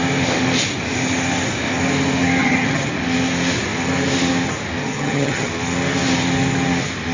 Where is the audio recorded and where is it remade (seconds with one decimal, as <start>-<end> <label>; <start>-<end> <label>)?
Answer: 0.0-2.4 recorded; 2.4-2.9 remade; 2.9-4.8 recorded; 4.8-5.5 remade; 5.5-7.1 recorded